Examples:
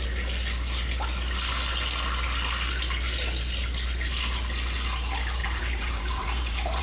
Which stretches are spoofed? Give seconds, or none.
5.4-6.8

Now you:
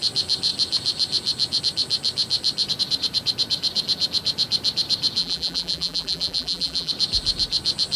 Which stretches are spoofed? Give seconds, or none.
5.2-6.9

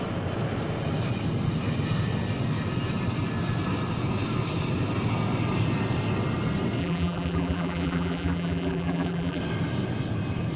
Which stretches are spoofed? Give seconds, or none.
6.8-9.4

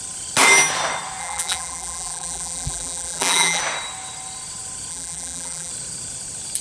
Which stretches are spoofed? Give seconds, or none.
1.2-3.6; 4.9-5.7

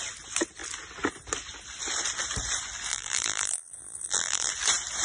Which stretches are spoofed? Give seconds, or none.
2.9-4.5